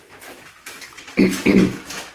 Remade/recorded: remade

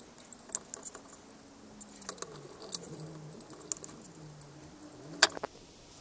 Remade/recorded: recorded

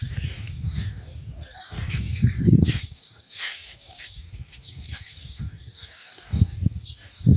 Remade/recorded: remade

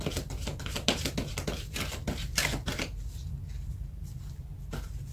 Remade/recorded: recorded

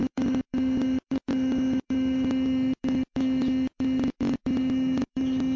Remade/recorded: remade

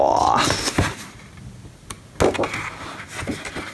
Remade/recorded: recorded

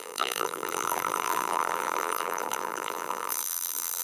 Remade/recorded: remade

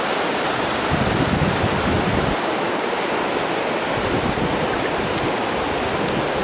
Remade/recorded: recorded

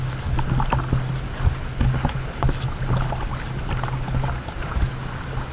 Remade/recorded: recorded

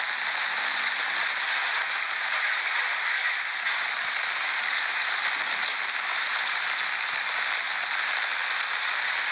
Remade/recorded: recorded